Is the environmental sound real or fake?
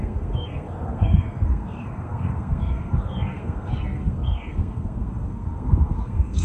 fake